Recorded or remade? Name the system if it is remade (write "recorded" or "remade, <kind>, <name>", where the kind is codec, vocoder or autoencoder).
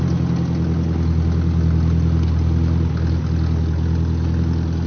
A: recorded